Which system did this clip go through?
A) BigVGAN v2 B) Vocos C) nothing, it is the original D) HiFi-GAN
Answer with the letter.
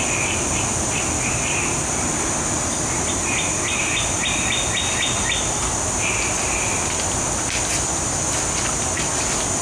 C